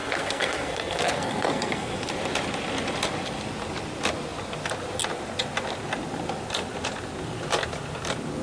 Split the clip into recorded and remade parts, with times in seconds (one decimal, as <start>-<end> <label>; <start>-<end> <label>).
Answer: 0.0-2.1 remade; 2.1-8.4 recorded